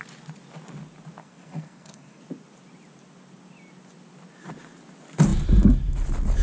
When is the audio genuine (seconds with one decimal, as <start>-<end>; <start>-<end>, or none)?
0.0-1.2; 2.2-6.4